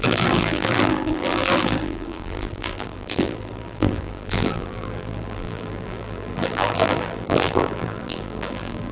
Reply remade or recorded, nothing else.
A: remade